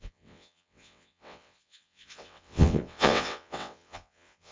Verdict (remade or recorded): remade